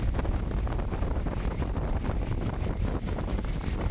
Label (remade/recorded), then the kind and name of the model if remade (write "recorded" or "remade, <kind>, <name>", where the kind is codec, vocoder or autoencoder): recorded